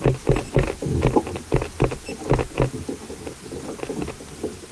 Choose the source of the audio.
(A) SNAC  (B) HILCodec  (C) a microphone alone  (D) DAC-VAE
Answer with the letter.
C